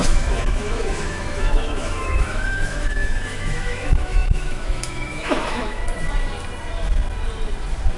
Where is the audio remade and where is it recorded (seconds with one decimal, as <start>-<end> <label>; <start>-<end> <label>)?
0.0-5.8 remade; 5.8-8.0 recorded